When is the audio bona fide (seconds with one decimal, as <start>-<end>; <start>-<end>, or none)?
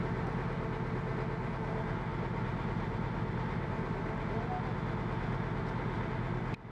0.0-6.7